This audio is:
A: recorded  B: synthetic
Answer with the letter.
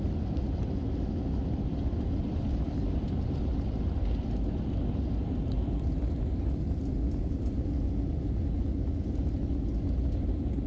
A